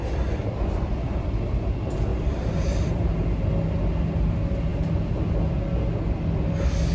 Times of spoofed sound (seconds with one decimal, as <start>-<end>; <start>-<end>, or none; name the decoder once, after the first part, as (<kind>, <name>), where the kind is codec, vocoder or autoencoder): 2.1-3.5 (vocoder, BigVGAN v2)